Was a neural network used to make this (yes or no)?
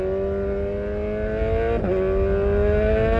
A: no